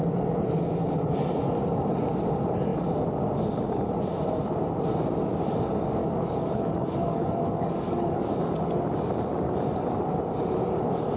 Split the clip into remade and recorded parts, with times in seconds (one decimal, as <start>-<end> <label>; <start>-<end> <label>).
0.0-6.0 recorded; 6.0-8.3 remade; 8.3-11.2 recorded